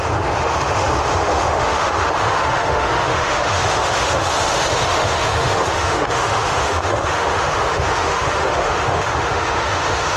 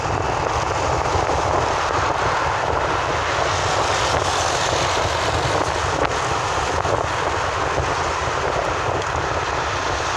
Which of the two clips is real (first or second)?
second